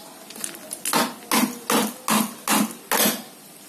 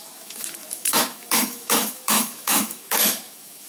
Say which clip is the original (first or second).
first